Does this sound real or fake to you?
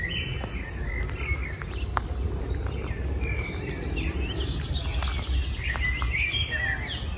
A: real